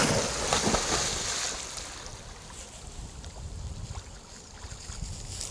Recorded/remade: recorded